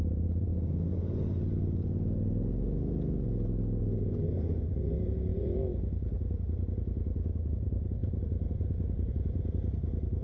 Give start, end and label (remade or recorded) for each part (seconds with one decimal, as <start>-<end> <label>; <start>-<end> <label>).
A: 0.0-0.5 remade; 0.5-4.3 recorded; 4.3-5.3 remade; 5.3-7.5 recorded; 7.5-10.2 remade